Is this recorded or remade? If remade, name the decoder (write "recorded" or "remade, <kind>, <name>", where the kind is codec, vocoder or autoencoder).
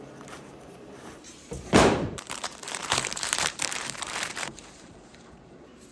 remade, vocoder, BigVGAN v2